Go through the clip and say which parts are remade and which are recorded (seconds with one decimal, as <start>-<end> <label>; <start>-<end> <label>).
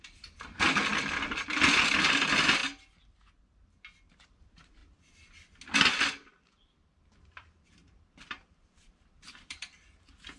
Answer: 0.0-2.6 remade; 2.6-4.2 recorded; 4.2-4.8 remade; 4.8-6.3 recorded; 6.3-10.4 remade